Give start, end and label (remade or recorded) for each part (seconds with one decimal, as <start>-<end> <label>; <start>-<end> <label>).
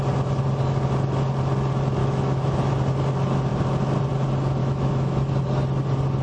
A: 0.0-2.0 recorded; 2.0-2.7 remade; 2.7-4.6 recorded; 4.6-5.3 remade; 5.3-6.2 recorded